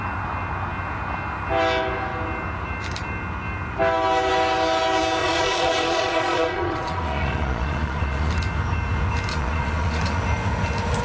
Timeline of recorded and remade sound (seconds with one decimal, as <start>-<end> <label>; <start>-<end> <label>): 0.0-5.2 recorded; 5.2-8.3 remade; 8.3-9.3 recorded; 9.3-10.2 remade; 10.2-11.0 recorded